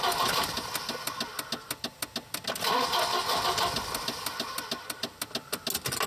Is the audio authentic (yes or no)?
yes